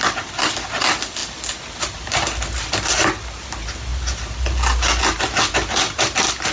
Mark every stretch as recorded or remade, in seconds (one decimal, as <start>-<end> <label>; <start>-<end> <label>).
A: 0.0-6.5 recorded